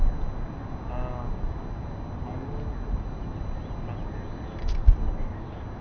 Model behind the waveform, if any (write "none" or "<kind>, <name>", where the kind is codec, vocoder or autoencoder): none